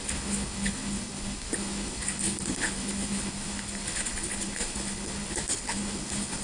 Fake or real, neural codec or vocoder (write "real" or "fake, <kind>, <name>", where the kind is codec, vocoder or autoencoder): fake, codec, HILCodec